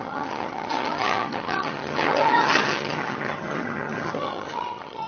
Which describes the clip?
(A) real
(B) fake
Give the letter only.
B